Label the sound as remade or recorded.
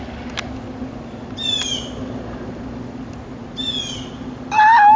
recorded